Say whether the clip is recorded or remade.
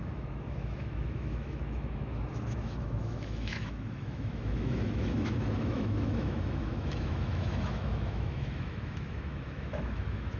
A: remade